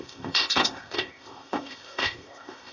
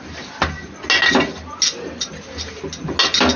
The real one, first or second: second